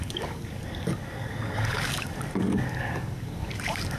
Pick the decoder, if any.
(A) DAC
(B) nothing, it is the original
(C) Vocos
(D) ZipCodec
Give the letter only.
A